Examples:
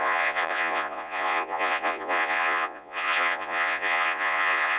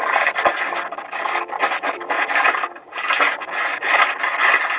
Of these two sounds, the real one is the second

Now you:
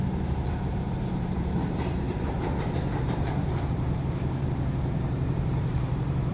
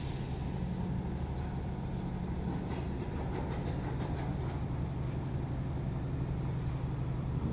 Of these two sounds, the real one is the second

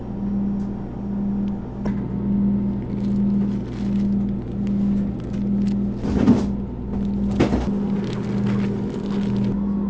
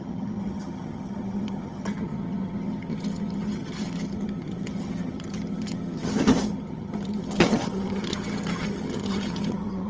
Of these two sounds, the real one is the first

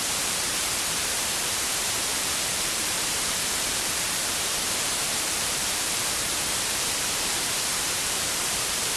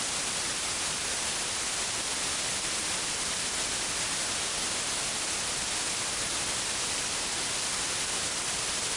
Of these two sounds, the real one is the second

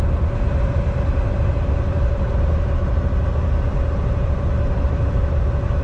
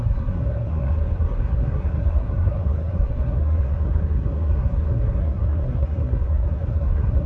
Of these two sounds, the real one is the first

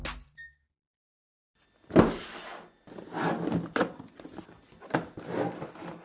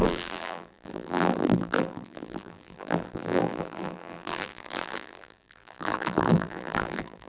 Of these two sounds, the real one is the first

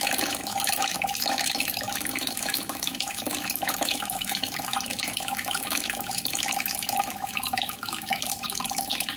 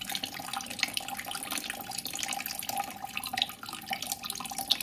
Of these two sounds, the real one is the second